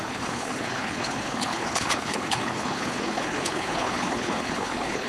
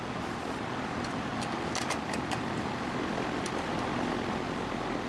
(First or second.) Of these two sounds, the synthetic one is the first